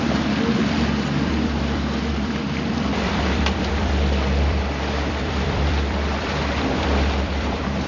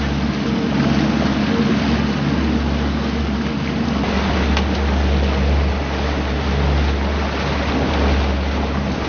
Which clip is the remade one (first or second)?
first